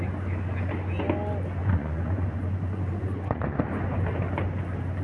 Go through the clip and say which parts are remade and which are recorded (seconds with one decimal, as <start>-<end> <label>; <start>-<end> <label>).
0.0-1.6 recorded; 1.6-3.7 remade; 3.7-5.0 recorded